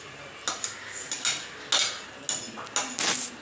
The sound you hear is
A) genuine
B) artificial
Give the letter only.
A